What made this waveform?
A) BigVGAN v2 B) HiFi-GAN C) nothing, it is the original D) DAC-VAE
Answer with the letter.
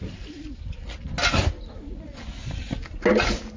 C